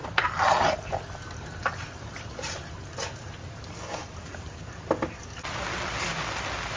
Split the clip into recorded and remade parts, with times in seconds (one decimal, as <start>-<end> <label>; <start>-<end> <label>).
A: 0.0-6.8 recorded

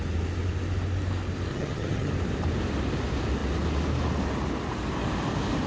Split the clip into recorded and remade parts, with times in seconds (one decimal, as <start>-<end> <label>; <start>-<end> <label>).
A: 0.0-1.5 recorded; 1.5-2.1 remade; 2.1-5.7 recorded

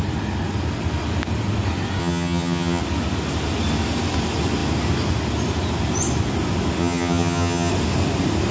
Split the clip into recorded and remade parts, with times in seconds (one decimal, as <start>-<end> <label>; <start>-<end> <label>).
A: 0.0-2.0 recorded; 2.0-2.8 remade; 2.8-6.8 recorded; 6.8-7.7 remade; 7.7-8.5 recorded

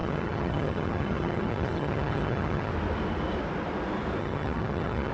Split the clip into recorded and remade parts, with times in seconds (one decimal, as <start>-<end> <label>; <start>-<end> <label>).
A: 0.0-2.7 remade; 2.7-4.2 recorded; 4.2-5.1 remade